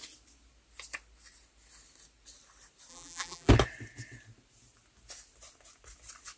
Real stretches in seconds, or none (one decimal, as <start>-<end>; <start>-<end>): 0.0-2.9; 3.5-6.4